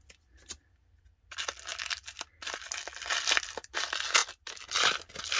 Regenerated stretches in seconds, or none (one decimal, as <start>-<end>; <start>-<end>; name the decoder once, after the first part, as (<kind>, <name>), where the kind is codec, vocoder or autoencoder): none